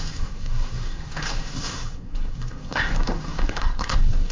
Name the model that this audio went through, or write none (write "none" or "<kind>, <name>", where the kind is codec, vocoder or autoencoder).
codec, SNAC